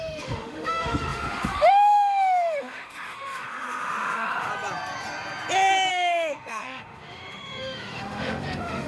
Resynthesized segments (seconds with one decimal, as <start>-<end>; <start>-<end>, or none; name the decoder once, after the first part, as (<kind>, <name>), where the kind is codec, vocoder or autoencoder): 0.0-4.5 (autoencoder, DAC-VAE); 5.9-8.9